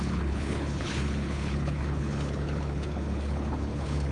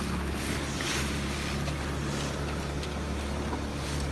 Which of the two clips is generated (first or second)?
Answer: first